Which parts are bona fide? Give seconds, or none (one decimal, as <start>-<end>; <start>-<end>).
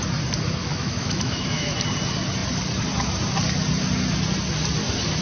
0.0-0.6; 1.7-5.2